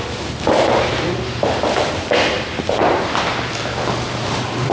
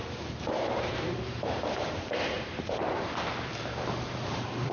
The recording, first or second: first